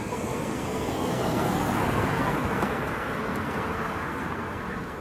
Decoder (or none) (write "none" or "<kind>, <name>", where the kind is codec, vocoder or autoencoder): codec, SNAC